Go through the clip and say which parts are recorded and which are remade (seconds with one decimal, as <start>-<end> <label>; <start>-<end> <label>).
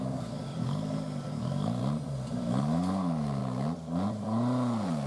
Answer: 0.0-1.8 remade; 1.8-2.4 recorded; 2.4-3.4 remade; 3.4-5.1 recorded